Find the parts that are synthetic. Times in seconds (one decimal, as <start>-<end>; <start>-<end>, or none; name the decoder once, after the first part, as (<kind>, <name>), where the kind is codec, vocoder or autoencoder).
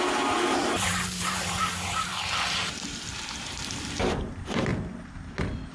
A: 0.0-2.1 (vocoder, BigVGAN v2); 2.6-4.7